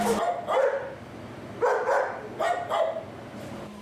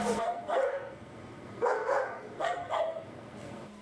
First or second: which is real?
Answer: first